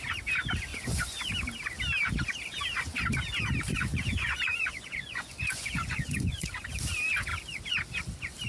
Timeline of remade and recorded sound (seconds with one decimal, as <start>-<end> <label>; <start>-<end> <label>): 0.0-0.7 recorded; 0.7-1.3 remade; 1.3-3.7 recorded; 3.7-6.5 remade; 6.5-8.5 recorded

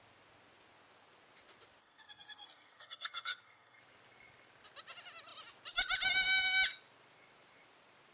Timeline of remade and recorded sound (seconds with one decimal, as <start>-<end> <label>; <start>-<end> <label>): 0.0-1.8 recorded; 1.8-3.8 remade; 3.8-8.1 recorded

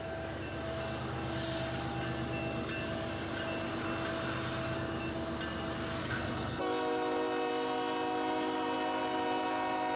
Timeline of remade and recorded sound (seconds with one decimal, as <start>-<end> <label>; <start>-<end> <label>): 0.0-6.0 recorded; 6.0-6.6 remade; 6.6-10.0 recorded

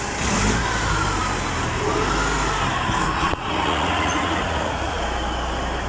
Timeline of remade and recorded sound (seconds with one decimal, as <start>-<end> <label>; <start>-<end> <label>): 0.0-3.0 recorded; 3.0-5.0 remade; 5.0-5.9 recorded

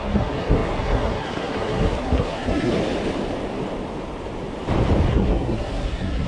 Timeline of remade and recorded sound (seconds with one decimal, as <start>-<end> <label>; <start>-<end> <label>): 0.0-2.7 remade; 2.7-5.1 recorded; 5.1-6.3 remade

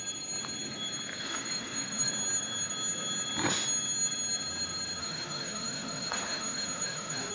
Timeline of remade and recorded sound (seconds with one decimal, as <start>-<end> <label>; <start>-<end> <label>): 0.0-1.1 recorded; 1.1-2.1 remade; 2.1-5.0 recorded; 5.0-7.3 remade